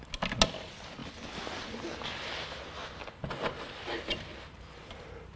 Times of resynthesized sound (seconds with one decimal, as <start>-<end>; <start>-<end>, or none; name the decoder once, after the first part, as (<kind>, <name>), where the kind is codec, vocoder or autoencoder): none